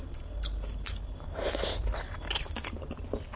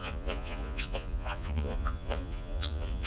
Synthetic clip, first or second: second